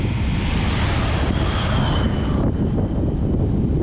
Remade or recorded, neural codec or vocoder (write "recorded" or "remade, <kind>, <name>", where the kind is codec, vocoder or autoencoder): recorded